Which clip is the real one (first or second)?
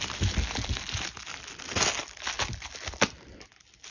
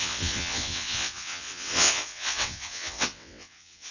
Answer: first